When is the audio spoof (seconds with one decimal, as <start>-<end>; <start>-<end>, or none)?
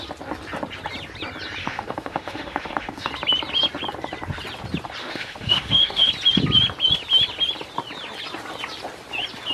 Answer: 1.6-3.1; 5.0-6.1